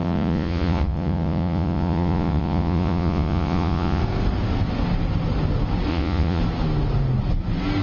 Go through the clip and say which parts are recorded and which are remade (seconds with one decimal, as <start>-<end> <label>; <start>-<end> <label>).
0.0-4.0 remade; 4.0-5.9 recorded; 5.9-6.4 remade; 6.4-7.8 recorded